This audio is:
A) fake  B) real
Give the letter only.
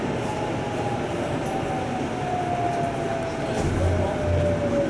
B